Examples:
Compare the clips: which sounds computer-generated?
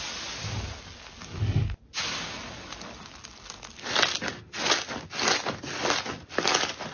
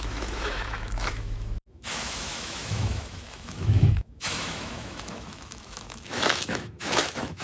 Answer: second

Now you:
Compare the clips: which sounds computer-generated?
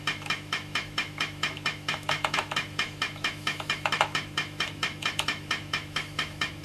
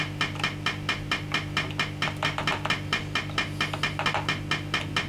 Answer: first